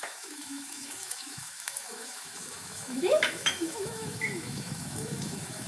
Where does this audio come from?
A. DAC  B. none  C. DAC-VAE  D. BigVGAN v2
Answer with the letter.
C